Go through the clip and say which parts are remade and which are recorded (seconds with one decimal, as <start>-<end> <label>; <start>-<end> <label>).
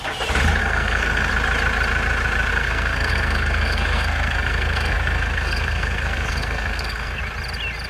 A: 0.0-0.6 recorded; 0.6-1.3 remade; 1.3-2.5 recorded; 2.5-7.2 remade; 7.2-7.9 recorded